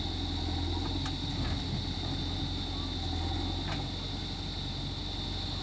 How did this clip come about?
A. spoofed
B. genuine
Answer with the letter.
B